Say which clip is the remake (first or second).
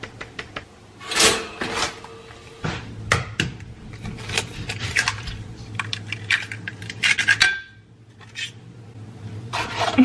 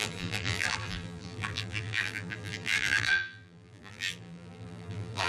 second